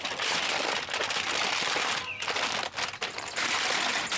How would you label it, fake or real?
real